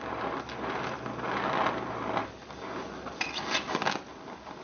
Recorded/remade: recorded